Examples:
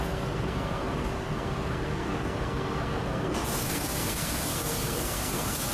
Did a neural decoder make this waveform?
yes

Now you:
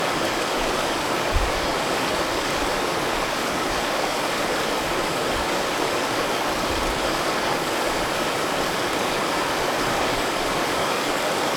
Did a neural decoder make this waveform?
yes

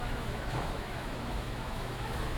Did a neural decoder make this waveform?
yes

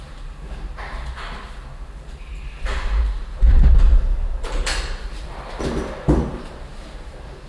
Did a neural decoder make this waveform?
yes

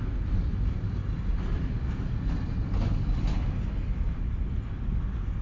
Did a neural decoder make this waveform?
no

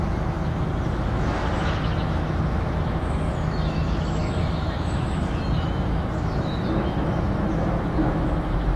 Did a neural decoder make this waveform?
yes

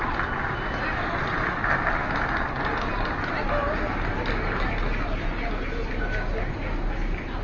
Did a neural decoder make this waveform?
no